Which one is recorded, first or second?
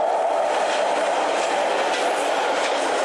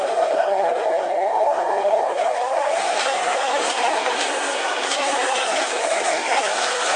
first